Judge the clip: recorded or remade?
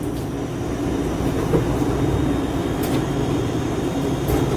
recorded